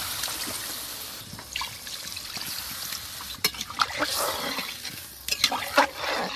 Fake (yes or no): yes